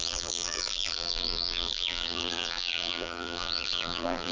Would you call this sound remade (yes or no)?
yes